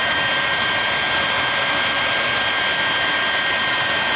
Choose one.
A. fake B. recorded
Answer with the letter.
B